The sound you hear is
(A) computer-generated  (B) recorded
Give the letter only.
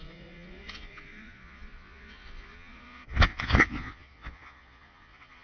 A